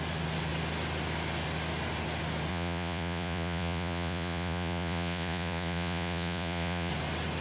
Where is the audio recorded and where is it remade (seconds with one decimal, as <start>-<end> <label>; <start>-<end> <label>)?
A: 0.0-2.5 recorded; 2.5-6.9 remade; 6.9-7.4 recorded

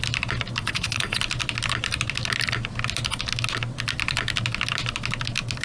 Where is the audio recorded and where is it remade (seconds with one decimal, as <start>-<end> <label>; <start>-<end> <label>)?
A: 0.0-0.6 recorded; 0.6-1.2 remade; 1.2-5.6 recorded

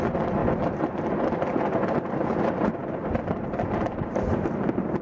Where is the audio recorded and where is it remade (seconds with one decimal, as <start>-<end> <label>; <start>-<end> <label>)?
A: 0.0-5.0 recorded

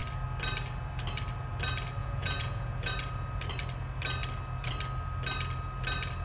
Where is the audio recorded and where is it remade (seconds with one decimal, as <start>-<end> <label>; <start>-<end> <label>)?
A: 0.0-2.0 recorded; 2.0-2.9 remade; 2.9-6.2 recorded

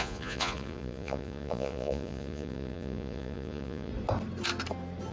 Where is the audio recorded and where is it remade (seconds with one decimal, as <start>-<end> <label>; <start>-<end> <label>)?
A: 0.0-3.9 remade; 3.9-5.1 recorded